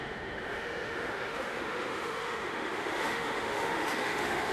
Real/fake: fake